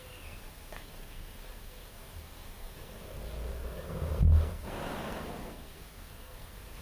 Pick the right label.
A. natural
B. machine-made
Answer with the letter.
B